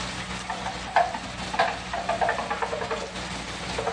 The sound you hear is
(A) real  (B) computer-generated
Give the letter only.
A